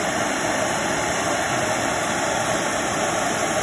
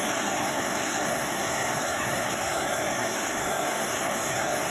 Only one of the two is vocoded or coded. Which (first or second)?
second